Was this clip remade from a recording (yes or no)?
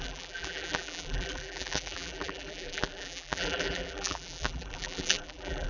yes